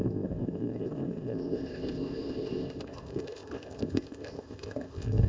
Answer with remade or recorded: remade